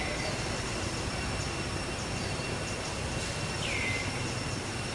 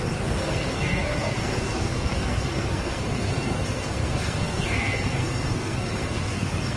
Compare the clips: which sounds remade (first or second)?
second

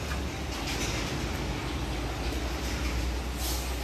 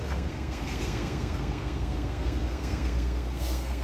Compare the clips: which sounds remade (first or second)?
second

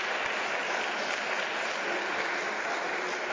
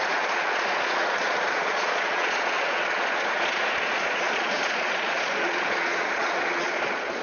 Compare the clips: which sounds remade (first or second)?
second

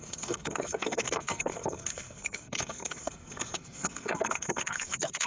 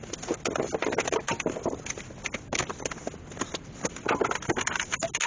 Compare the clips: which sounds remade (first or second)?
first